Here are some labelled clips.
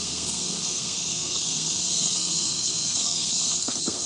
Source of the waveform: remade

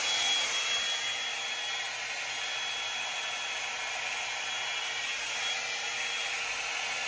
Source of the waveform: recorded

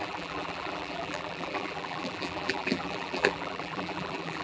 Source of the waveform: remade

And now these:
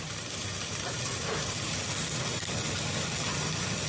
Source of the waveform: recorded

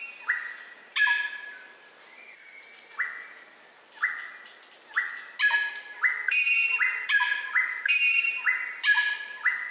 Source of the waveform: recorded